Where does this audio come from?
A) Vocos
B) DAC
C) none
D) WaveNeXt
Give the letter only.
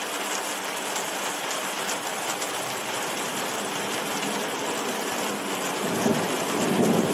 C